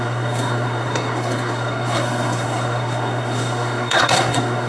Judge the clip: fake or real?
fake